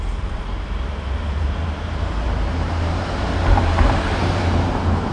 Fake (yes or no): yes